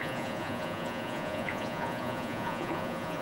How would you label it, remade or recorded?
remade